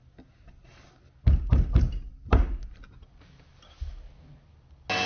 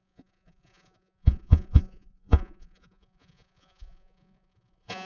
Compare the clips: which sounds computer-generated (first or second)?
second